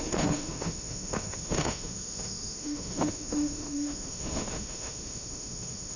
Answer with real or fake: fake